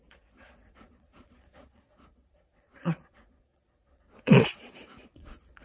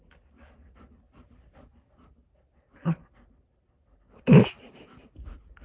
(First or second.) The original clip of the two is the second